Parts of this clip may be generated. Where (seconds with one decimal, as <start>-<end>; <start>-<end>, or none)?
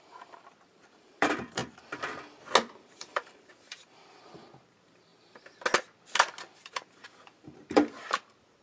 0.0-1.6; 2.8-5.1; 6.4-8.6